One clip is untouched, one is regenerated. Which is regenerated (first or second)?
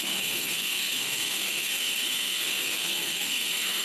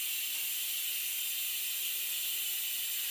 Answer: first